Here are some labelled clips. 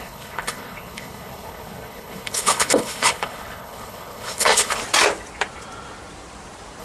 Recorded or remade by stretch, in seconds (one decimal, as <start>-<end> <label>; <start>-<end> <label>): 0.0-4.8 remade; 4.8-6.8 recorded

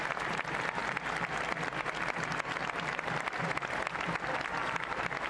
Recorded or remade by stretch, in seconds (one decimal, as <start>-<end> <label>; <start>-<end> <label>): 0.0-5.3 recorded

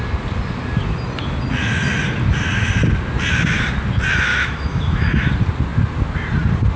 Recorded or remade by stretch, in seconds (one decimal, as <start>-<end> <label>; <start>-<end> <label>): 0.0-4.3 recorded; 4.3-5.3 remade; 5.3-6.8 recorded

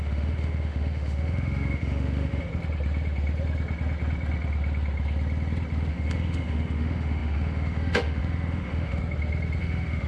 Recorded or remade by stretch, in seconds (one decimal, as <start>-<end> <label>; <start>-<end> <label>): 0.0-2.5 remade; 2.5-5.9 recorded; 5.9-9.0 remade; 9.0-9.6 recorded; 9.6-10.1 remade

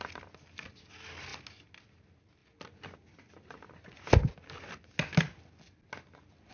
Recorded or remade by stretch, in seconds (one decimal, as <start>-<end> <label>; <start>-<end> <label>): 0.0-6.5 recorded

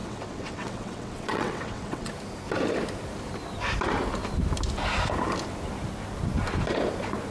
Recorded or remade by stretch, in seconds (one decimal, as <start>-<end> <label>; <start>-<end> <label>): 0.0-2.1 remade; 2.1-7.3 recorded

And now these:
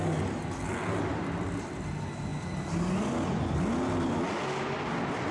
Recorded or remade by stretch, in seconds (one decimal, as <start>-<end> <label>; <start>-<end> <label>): 0.0-5.3 recorded